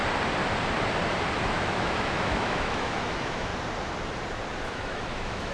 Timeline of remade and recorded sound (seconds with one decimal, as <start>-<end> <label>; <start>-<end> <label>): 0.0-1.5 recorded; 1.5-3.5 remade; 3.5-4.6 recorded; 4.6-5.5 remade

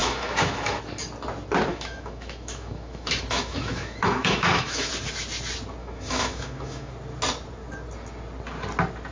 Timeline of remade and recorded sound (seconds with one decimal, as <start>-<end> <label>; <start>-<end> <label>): 0.0-0.8 remade; 0.8-1.7 recorded; 1.7-4.9 remade; 4.9-5.8 recorded; 5.8-6.9 remade; 6.9-9.1 recorded